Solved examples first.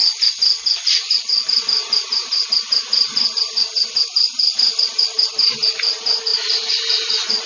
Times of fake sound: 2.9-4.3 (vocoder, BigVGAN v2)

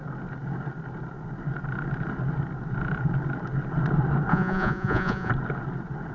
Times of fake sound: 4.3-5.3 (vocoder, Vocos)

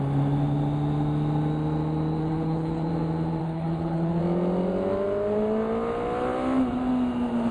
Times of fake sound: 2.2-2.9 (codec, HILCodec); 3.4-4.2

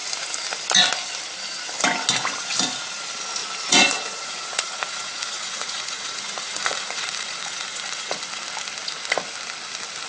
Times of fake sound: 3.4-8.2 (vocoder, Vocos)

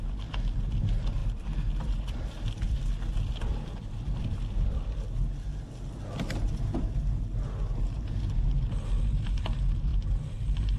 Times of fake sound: 9.9-10.4 (vocoder, BigVGAN v2)

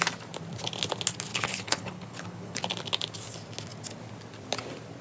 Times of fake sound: 1.3-2.6 (codec, HILCodec)

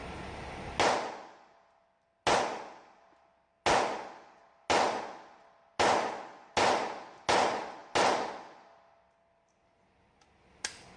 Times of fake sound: none

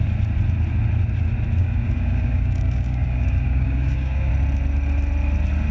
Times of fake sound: 1.6-4.3 (codec, DAC)